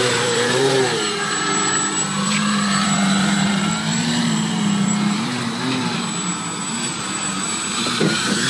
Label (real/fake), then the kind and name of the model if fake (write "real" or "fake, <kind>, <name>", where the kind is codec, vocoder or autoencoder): fake, vocoder, BigVGAN v2